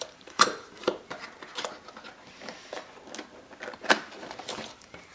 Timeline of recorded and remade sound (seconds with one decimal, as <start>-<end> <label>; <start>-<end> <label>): 0.0-0.8 remade; 0.8-3.8 recorded; 3.8-5.1 remade

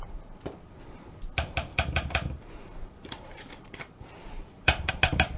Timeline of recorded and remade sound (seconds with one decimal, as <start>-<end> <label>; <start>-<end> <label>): 0.0-1.7 recorded; 1.7-4.9 remade; 4.9-5.4 recorded

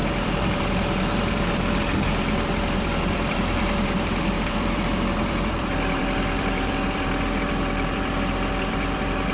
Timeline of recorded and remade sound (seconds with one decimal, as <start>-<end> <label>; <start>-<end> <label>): 0.0-9.3 remade

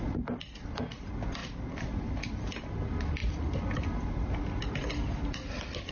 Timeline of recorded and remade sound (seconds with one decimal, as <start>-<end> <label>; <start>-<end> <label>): 0.0-1.4 recorded; 1.4-2.7 remade; 2.7-3.2 recorded; 3.2-5.5 remade; 5.5-5.9 recorded

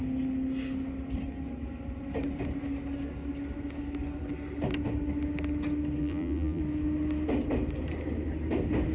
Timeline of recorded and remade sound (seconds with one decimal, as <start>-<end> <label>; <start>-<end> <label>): 0.0-6.0 recorded; 6.0-6.6 remade; 6.6-8.9 recorded

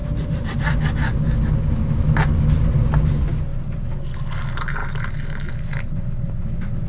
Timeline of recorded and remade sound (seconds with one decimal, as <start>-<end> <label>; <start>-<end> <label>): 0.0-0.8 remade; 0.8-3.5 recorded; 3.5-4.0 remade; 4.0-6.9 recorded